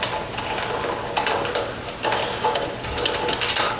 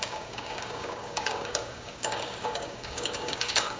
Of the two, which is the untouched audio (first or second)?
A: first